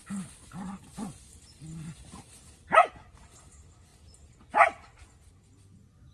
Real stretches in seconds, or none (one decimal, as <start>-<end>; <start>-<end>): 0.0-6.1